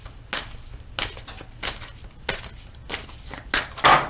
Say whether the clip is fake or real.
real